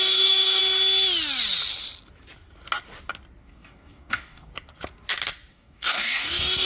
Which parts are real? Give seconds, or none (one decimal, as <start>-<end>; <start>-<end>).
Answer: 0.6-3.4; 4.5-5.5